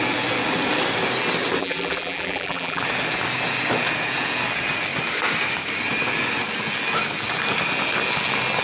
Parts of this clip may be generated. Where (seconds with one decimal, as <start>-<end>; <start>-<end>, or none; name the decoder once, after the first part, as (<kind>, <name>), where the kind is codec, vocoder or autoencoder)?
1.6-2.8 (vocoder, BigVGAN v2)